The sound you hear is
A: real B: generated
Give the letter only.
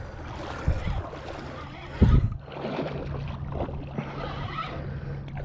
A